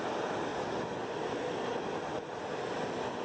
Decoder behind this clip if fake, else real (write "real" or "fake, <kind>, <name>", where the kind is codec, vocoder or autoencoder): real